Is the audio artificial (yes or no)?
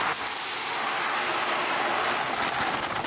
no